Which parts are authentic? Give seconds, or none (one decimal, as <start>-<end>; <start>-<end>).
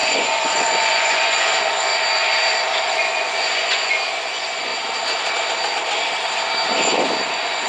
1.9-2.9; 4.7-7.3